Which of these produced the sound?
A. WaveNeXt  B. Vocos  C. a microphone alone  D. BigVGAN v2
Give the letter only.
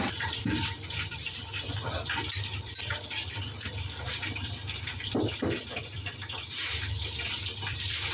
D